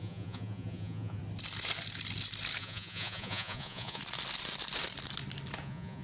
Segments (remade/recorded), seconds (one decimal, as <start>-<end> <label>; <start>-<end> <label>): 0.0-1.2 remade; 1.2-2.6 recorded; 2.6-4.0 remade; 4.0-5.6 recorded; 5.6-6.0 remade